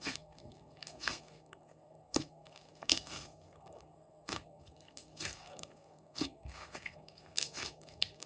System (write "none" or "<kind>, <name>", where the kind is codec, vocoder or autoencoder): codec, SNAC